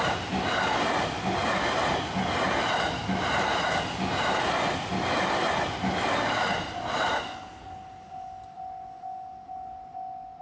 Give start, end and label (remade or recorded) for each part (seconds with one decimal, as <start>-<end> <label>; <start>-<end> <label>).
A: 0.0-10.4 recorded